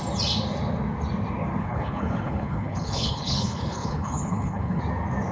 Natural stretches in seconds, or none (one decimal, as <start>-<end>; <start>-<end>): 0.0-1.6; 4.8-5.3